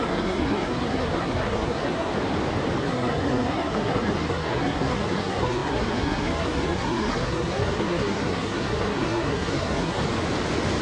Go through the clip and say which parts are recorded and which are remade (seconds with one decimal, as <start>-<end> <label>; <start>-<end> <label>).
0.0-2.1 remade; 2.1-2.8 recorded; 2.8-10.0 remade; 10.0-10.8 recorded